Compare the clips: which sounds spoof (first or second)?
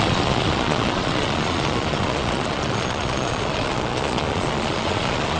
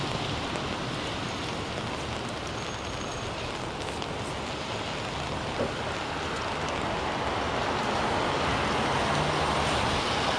first